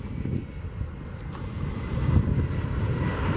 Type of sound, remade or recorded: recorded